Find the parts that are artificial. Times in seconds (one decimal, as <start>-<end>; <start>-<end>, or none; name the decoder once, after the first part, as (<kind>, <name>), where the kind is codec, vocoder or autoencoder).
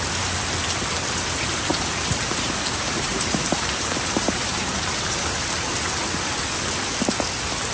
1.7-5.4 (vocoder, BigVGAN v2)